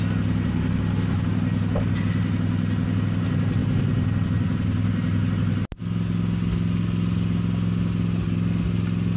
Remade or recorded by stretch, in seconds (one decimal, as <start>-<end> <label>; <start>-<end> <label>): 0.0-9.2 recorded

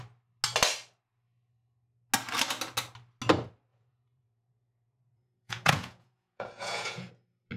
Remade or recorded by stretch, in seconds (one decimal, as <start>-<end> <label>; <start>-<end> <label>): 0.0-3.7 recorded; 3.7-7.1 remade; 7.1-7.6 recorded

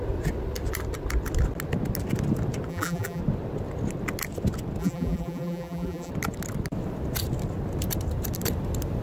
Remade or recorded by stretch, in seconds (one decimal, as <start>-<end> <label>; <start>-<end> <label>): 0.0-2.7 recorded; 2.7-3.2 remade; 3.2-4.8 recorded; 4.8-6.1 remade; 6.1-9.0 recorded